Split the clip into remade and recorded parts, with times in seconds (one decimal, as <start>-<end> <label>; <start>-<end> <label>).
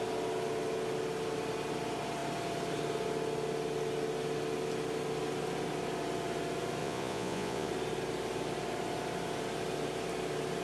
0.0-6.8 recorded; 6.8-7.7 remade; 7.7-10.6 recorded